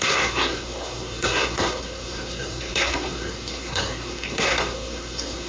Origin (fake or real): fake